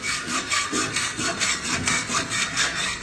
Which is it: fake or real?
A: fake